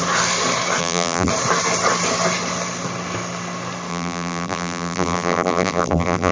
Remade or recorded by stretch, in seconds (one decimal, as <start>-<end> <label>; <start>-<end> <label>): 0.0-0.8 recorded; 0.8-1.3 remade; 1.3-3.9 recorded; 3.9-6.3 remade